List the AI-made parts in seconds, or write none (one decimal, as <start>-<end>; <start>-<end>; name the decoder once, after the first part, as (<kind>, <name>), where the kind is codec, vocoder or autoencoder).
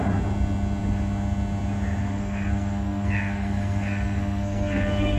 2.0-5.2 (codec, SNAC)